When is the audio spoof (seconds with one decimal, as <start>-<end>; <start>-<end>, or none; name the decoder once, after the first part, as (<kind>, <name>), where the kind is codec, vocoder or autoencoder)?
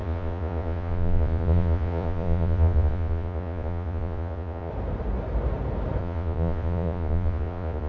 0.0-4.7 (vocoder, Vocos); 6.0-7.9